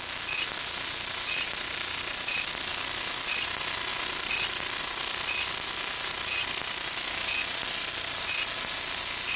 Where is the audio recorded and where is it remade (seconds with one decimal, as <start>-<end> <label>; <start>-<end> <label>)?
0.0-9.4 recorded